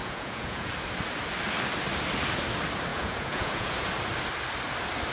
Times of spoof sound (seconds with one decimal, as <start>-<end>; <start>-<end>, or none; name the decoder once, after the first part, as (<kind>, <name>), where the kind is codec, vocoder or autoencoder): 0.0-0.7 (vocoder, Vocos); 2.9-3.7